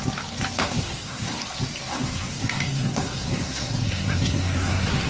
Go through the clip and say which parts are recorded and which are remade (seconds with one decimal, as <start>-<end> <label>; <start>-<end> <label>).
0.0-0.6 recorded; 0.6-1.4 remade; 1.4-1.9 recorded; 1.9-5.1 remade

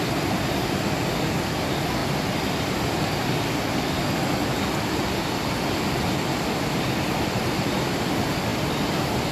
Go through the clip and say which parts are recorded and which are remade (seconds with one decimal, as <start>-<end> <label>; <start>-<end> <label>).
0.0-9.3 recorded